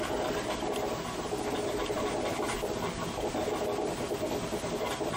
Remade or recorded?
recorded